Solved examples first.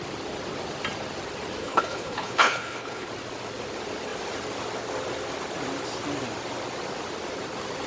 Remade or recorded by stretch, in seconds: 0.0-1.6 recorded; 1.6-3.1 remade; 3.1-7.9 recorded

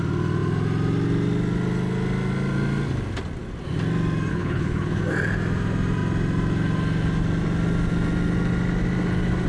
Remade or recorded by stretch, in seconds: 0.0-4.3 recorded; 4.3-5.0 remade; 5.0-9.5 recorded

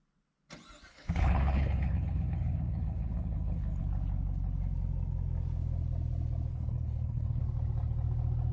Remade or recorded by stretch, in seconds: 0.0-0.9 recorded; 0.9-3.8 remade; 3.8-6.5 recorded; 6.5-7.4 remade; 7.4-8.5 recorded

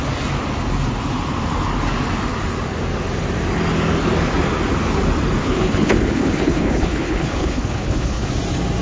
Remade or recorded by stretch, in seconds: 0.0-5.4 recorded; 5.4-8.3 remade; 8.3-8.8 recorded

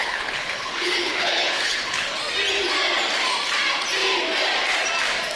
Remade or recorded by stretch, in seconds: 0.0-2.2 remade; 2.2-5.4 recorded

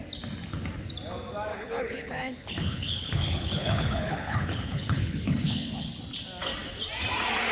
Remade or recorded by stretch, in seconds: 0.0-1.5 recorded; 1.5-6.0 remade; 6.0-7.5 recorded